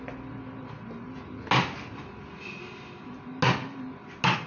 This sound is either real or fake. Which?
real